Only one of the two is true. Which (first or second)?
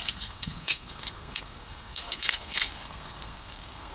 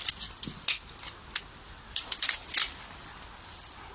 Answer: second